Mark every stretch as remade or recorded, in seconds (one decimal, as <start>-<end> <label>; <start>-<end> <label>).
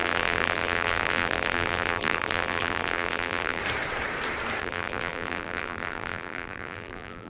0.0-3.6 remade; 3.6-4.6 recorded; 4.6-7.3 remade